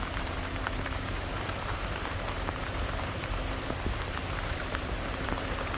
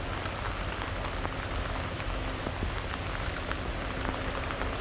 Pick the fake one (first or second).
first